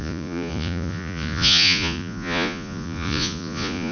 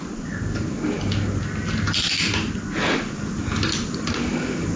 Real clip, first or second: second